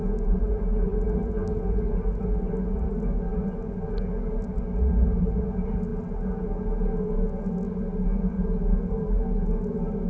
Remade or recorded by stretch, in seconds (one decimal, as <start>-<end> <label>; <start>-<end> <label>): 0.0-10.1 recorded